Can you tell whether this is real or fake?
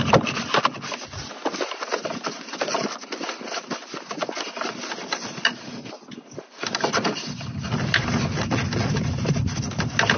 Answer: real